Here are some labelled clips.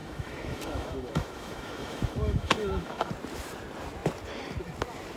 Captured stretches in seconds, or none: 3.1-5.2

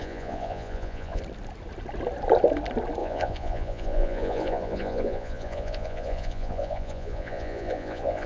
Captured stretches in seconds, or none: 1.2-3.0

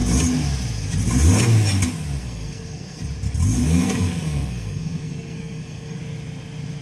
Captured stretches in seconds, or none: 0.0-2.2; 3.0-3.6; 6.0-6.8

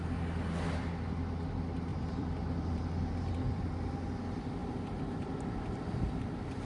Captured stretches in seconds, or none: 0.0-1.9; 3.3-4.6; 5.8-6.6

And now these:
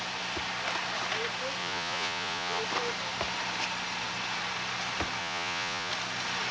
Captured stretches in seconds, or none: 0.0-1.6; 2.6-5.2; 5.9-6.5